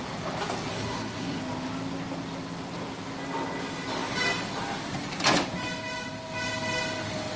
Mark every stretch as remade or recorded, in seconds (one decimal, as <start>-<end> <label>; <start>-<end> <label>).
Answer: 0.0-0.7 recorded; 0.7-1.4 remade; 1.4-7.4 recorded